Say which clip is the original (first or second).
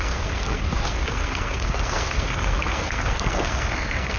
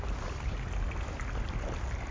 second